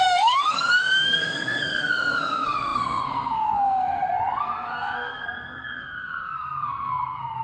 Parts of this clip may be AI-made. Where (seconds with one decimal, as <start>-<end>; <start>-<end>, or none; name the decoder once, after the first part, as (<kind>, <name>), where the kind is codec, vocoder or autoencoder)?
0.0-7.4 (codec, SNAC)